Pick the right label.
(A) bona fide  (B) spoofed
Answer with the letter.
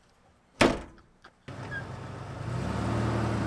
A